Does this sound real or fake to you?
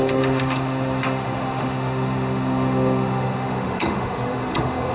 fake